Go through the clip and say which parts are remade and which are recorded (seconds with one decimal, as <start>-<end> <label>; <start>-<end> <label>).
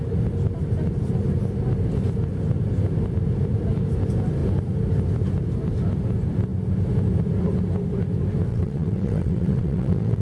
0.0-8.5 recorded; 8.5-10.2 remade